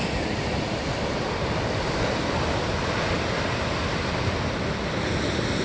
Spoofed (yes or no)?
no